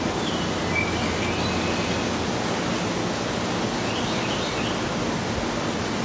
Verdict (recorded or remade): recorded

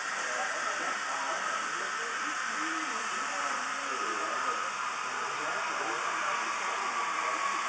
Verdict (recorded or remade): recorded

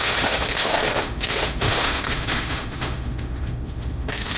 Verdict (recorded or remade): remade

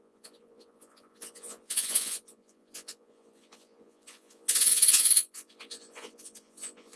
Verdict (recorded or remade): remade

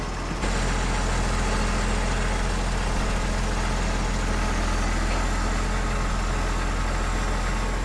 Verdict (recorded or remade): recorded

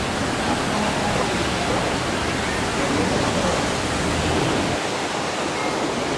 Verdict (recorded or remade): recorded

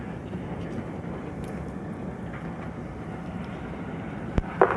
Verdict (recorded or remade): recorded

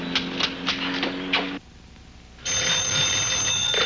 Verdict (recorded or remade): recorded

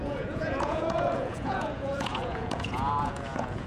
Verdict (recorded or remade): remade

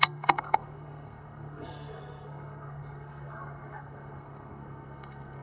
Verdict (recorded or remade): remade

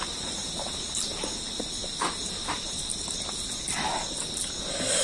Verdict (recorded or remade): recorded